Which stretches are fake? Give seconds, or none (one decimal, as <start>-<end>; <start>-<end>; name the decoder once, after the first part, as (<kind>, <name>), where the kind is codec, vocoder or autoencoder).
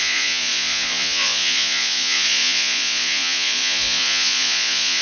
0.0-5.0 (vocoder, Vocos)